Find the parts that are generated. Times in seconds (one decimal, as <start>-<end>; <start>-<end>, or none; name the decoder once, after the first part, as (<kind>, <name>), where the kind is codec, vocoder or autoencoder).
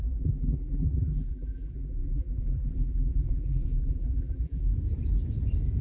0.0-4.7 (vocoder, BigVGAN v2)